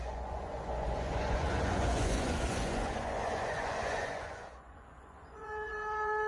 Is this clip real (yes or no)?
no